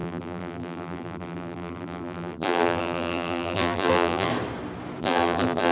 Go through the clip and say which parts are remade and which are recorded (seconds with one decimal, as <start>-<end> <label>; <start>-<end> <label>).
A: 0.0-4.3 remade; 4.3-5.0 recorded; 5.0-5.7 remade